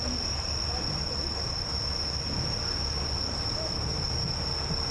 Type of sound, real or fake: real